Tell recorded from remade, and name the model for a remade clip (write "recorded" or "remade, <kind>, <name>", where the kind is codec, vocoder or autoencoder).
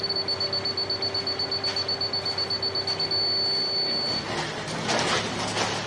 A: recorded